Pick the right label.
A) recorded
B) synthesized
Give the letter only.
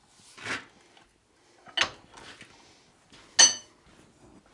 A